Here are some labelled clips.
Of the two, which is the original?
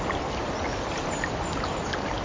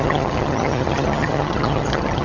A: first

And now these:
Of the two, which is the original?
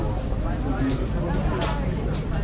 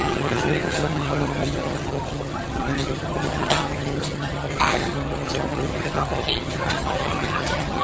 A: first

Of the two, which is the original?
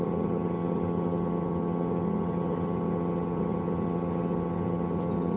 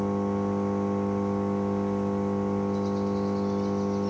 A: second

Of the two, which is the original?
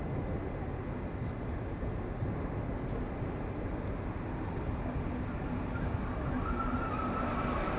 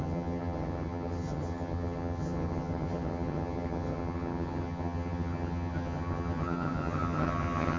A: first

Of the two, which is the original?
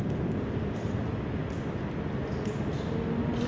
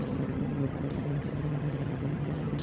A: first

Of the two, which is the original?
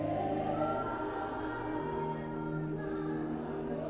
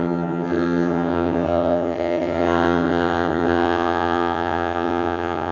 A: first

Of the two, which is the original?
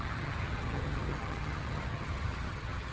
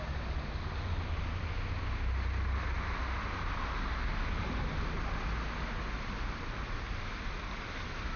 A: second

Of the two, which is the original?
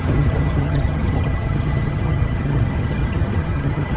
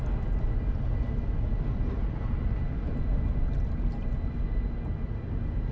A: second